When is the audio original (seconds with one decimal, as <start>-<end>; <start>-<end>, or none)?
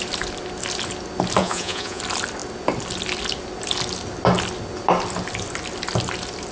0.0-1.4; 2.0-6.5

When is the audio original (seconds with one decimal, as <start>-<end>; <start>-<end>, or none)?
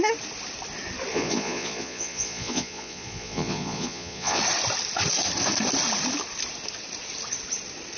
0.0-1.1; 4.4-8.0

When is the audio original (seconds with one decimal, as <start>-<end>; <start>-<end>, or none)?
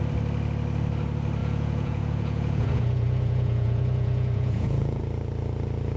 0.0-1.4; 5.0-6.0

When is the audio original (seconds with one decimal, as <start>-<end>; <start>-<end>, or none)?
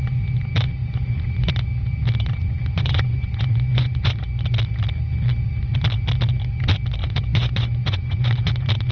0.0-0.8; 1.5-2.4; 4.1-7.0; 8.5-8.9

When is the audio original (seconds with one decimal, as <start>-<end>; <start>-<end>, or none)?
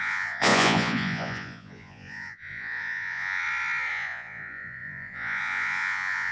3.4-3.9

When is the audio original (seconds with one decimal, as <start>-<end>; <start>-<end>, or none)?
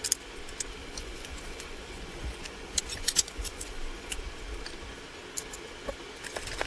0.0-0.8; 4.2-6.7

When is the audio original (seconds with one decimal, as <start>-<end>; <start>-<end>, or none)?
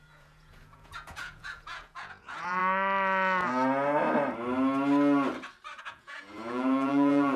2.6-5.8